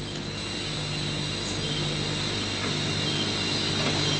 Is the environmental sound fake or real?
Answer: real